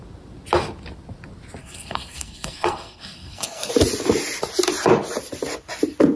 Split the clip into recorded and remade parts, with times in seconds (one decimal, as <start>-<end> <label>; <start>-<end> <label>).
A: 0.0-1.6 recorded; 1.6-3.7 remade; 3.7-6.2 recorded